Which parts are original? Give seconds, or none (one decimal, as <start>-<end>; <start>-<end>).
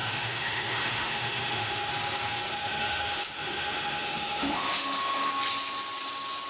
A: 1.9-2.5; 5.3-6.5